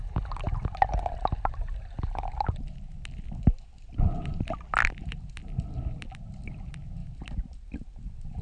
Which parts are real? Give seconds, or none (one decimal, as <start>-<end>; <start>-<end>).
0.0-8.4

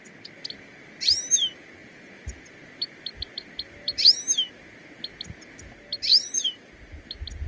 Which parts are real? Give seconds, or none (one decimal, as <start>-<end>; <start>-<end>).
0.0-6.1; 6.7-7.5